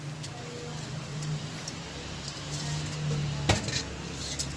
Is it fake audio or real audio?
real